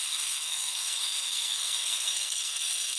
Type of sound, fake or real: fake